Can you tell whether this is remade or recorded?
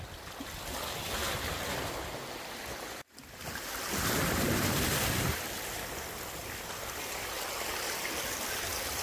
recorded